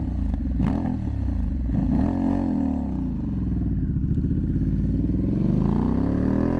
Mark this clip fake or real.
real